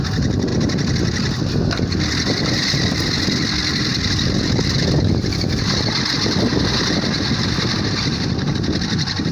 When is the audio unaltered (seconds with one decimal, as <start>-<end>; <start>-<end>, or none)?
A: 0.0-9.3